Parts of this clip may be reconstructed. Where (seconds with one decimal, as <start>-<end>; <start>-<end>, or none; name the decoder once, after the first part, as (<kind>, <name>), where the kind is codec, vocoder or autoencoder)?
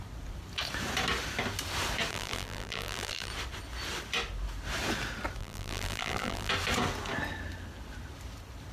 2.1-3.3 (vocoder, BigVGAN v2); 5.4-6.5